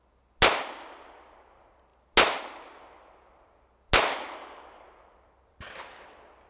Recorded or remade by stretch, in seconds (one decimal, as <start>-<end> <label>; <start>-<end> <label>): 0.0-6.5 recorded